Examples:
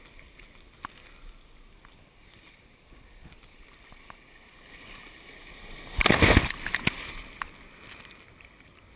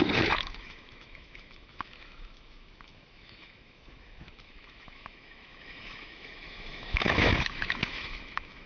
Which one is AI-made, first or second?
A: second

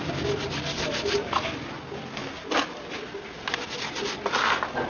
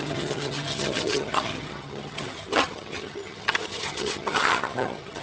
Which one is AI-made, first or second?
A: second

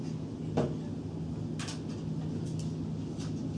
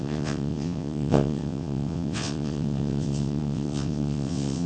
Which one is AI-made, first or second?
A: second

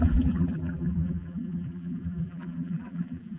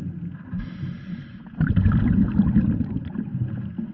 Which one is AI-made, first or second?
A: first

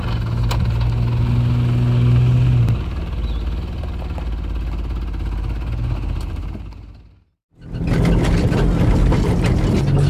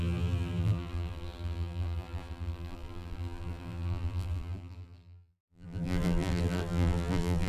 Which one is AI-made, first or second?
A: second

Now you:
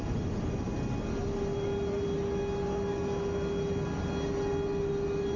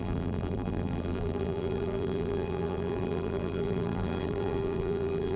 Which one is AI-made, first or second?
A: second